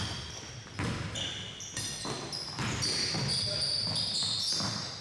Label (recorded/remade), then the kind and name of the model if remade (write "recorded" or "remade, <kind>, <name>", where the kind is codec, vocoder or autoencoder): recorded